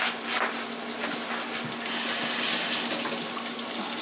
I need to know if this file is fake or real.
real